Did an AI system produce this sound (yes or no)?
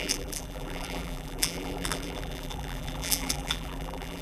yes